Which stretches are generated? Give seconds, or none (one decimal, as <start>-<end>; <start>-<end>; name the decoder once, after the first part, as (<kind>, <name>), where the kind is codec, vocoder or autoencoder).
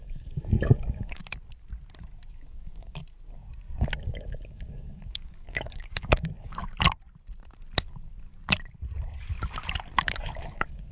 0.0-1.2 (codec, DAC); 2.3-3.0; 4.0-6.6; 10.1-10.9